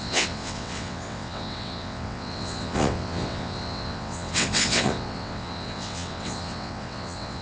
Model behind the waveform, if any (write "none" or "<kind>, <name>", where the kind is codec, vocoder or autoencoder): vocoder, WaveNeXt